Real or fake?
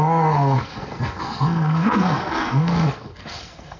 fake